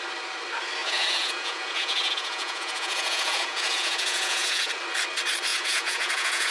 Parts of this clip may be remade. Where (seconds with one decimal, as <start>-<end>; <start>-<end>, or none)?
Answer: 0.8-4.7; 5.5-6.5